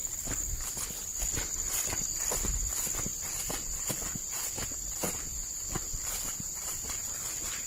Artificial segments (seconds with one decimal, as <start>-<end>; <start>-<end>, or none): 0.0-0.7; 3.1-3.7; 5.4-7.1